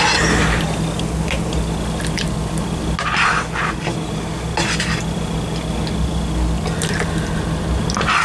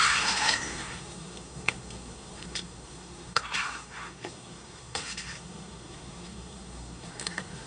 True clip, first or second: first